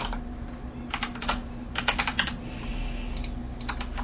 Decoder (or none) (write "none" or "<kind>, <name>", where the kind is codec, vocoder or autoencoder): none